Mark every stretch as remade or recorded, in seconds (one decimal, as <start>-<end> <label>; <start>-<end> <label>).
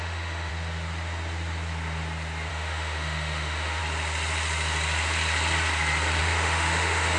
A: 0.0-0.5 remade; 0.5-2.5 recorded; 2.5-3.8 remade; 3.8-6.2 recorded; 6.2-7.2 remade